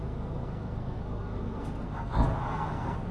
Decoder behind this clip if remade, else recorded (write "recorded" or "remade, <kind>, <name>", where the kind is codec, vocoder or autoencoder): remade, codec, SNAC